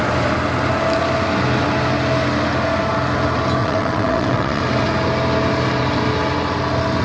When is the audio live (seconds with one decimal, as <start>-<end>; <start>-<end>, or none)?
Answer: 0.0-3.6; 4.6-7.0